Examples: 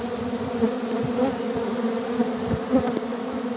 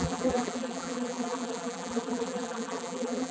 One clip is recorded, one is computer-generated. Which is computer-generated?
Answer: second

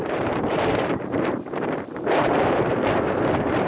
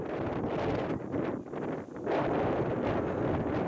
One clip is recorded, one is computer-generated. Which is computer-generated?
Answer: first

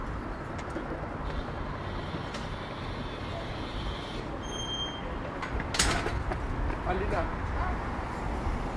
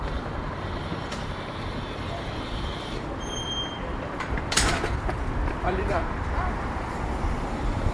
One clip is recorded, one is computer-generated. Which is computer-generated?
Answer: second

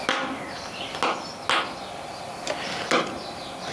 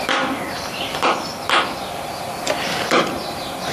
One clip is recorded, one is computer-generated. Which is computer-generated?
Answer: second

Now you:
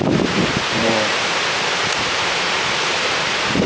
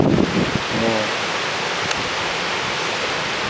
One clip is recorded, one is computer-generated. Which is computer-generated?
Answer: first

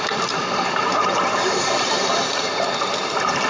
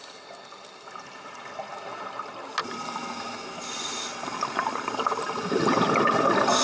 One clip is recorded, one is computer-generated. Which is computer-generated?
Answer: first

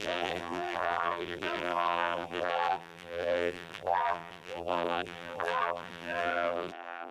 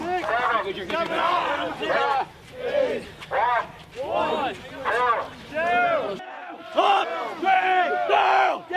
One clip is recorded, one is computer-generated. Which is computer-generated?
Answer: first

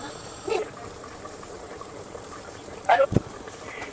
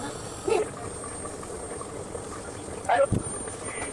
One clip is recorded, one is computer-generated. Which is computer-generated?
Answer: first